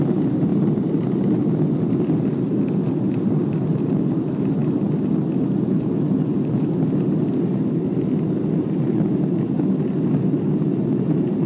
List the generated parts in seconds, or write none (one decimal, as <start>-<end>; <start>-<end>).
0.5-1.0